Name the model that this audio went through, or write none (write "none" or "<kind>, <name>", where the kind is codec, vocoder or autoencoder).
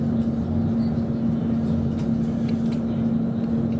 none